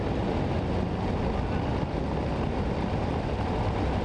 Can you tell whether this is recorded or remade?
recorded